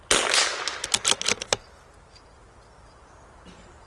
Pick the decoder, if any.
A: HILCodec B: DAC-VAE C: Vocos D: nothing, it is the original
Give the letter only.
D